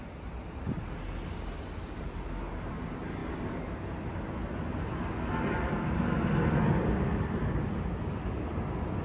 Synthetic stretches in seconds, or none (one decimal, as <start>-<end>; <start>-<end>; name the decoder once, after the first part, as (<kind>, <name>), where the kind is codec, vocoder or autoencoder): none